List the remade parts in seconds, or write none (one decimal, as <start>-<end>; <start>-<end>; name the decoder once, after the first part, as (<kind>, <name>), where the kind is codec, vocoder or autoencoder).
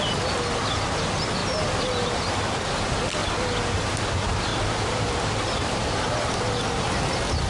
4.5-7.5 (vocoder, BigVGAN v2)